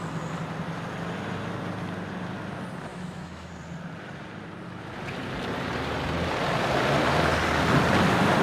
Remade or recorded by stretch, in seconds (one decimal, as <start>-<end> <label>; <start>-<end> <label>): 0.0-2.9 recorded; 2.9-3.5 remade; 3.5-8.4 recorded